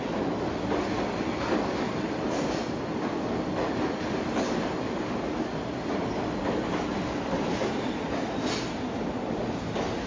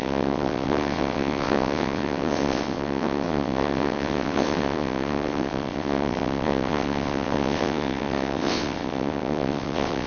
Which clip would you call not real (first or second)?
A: second